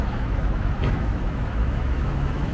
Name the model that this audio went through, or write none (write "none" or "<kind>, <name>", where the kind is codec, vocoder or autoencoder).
autoencoder, DAC-VAE